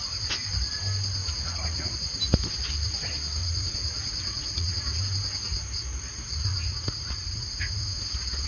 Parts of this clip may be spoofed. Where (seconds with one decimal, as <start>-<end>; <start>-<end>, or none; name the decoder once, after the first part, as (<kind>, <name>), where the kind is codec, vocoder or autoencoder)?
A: 1.2-1.9 (vocoder, Vocos); 3.4-5.0; 6.5-8.0